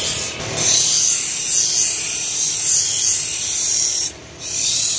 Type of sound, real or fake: real